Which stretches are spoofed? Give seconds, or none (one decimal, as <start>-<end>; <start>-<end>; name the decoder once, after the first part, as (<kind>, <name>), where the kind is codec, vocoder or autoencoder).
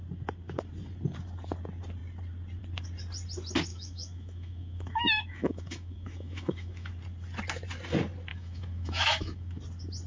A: 3.7-6.9 (autoencoder, DAC-VAE); 8.3-9.6